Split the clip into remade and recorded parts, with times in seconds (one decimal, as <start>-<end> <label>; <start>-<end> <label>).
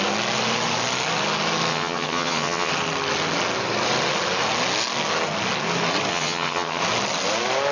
0.0-1.7 recorded; 1.7-2.7 remade; 2.7-6.1 recorded; 6.1-6.8 remade; 6.8-7.7 recorded